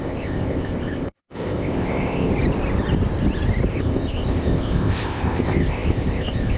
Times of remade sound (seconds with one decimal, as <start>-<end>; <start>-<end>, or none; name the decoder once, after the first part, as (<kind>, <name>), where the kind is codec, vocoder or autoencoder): 0.0-2.3 (codec, ZipCodec); 3.7-6.6

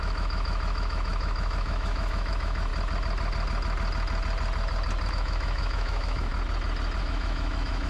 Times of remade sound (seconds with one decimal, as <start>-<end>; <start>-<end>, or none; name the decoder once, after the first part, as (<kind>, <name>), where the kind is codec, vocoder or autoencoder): 0.0-2.7 (autoencoder, DAC-VAE); 5.1-6.3; 7.0-7.9